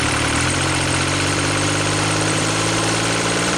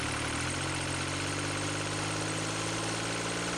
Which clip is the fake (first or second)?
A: first